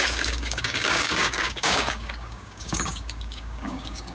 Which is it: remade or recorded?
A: remade